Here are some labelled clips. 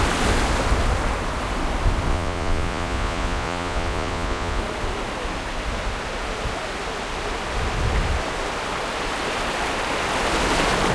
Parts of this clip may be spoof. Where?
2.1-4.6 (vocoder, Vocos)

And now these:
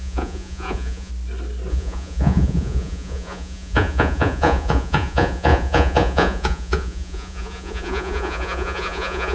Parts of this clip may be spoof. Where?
0.0-1.1 (vocoder, Vocos); 1.7-9.3